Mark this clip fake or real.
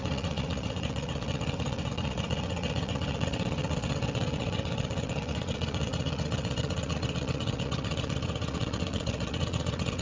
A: fake